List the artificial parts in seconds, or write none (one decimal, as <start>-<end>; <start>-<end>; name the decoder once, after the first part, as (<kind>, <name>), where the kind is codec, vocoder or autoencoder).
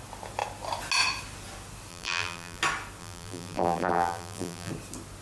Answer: 1.9-2.6 (vocoder, BigVGAN v2); 3.0-4.7